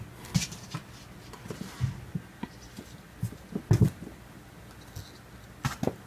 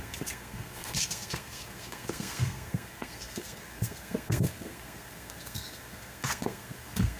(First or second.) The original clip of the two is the first